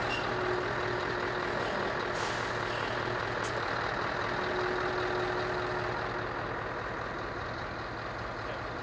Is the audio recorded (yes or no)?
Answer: yes